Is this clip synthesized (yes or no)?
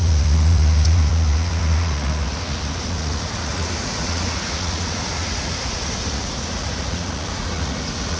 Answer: yes